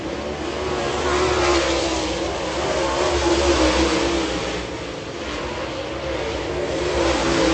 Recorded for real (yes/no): yes